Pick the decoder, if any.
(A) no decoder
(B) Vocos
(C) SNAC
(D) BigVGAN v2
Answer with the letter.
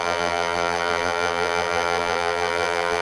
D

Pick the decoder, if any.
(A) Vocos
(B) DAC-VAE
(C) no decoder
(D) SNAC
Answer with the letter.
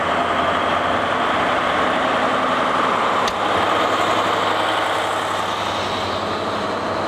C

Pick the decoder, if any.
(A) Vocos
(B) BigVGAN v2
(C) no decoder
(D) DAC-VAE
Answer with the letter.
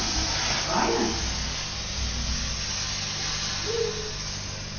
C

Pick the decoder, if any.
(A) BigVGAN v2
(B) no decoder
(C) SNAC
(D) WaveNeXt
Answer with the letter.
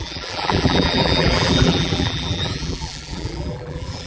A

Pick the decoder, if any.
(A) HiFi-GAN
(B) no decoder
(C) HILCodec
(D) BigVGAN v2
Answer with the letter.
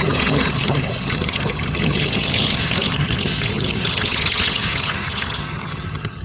A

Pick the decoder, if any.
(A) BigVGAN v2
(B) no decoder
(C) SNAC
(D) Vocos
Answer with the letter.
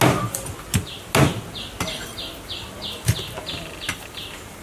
B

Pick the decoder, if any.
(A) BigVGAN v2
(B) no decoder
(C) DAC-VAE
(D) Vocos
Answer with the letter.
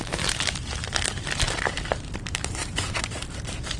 A